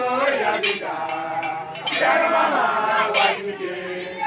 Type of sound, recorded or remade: recorded